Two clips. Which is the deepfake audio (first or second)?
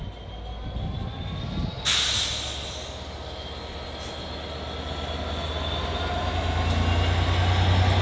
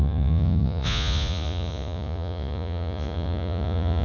second